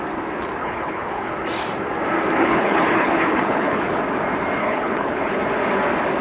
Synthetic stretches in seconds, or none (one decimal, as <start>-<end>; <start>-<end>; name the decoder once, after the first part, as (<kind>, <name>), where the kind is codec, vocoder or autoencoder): 0.6-1.3 (codec, HILCodec); 2.4-4.0; 4.6-5.4